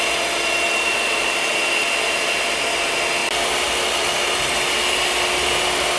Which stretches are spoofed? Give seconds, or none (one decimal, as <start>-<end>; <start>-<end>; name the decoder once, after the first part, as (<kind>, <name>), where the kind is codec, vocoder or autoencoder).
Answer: none